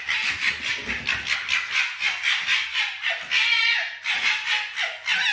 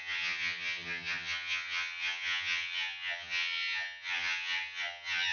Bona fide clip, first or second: first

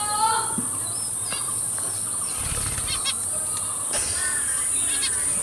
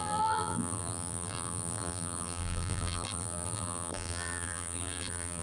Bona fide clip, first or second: first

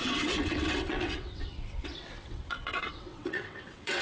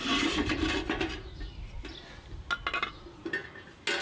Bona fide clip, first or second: second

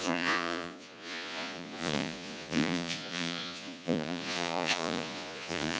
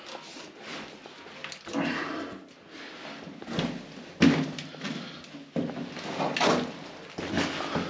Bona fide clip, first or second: second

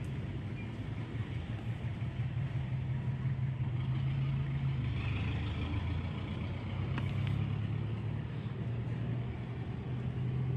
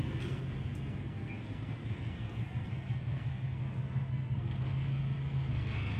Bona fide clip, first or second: first